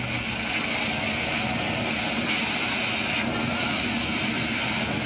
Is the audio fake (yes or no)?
no